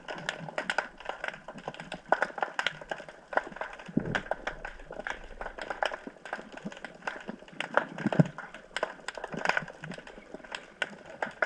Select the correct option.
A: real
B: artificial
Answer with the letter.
A